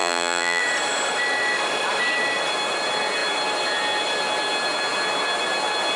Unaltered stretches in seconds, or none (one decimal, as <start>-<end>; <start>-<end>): 0.6-6.0